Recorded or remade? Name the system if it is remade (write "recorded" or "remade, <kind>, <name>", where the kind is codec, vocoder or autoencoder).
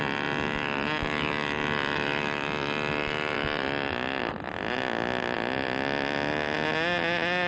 recorded